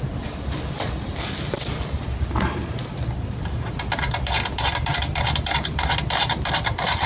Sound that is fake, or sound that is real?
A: real